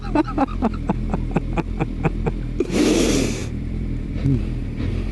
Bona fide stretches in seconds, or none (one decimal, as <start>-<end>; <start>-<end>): 0.0-3.4; 4.4-5.1